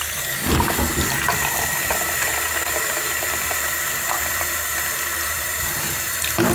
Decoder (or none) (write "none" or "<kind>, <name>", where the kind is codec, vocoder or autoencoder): vocoder, BigVGAN v2